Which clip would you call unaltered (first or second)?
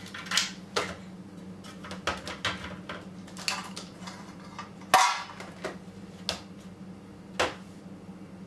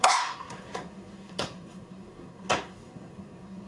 first